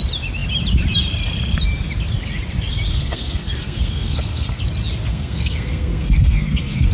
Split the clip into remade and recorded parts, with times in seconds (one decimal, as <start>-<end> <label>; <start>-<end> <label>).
0.0-2.9 recorded; 2.9-4.6 remade; 4.6-5.1 recorded; 5.1-6.9 remade